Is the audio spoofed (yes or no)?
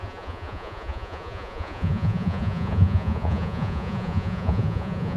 yes